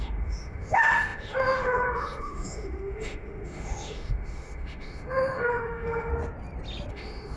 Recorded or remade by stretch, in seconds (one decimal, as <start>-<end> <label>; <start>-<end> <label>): 0.0-6.1 remade; 6.1-6.9 recorded; 6.9-7.4 remade